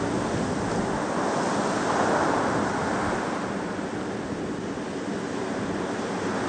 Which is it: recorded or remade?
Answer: recorded